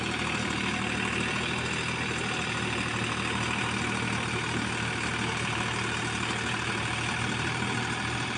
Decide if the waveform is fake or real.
real